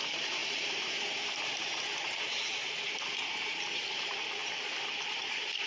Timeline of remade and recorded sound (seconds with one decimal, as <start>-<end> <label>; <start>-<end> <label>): 0.0-4.4 remade; 4.4-5.1 recorded; 5.1-5.7 remade